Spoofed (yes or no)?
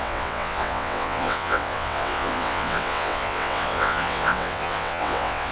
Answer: yes